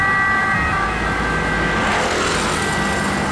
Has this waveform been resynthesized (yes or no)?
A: no